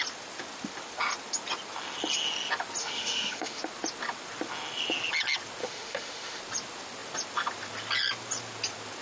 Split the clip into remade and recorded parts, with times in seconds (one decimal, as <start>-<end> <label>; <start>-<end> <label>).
0.0-2.8 recorded; 2.8-3.6 remade; 3.6-5.6 recorded; 5.6-6.4 remade; 6.4-9.0 recorded